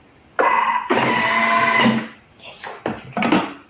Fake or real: real